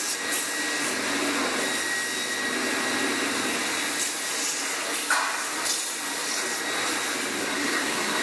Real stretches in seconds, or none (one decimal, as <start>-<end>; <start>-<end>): 0.0-7.4